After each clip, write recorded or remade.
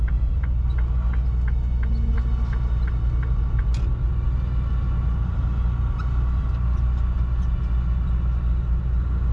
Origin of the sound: recorded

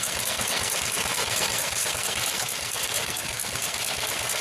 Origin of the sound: remade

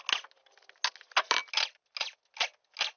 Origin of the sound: recorded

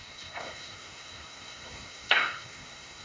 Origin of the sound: remade